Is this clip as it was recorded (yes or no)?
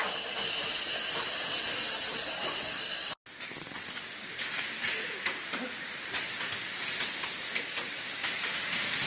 yes